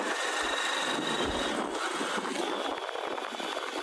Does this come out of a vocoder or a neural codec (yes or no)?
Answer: no